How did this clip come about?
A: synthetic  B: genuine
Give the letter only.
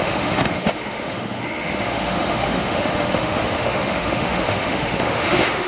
A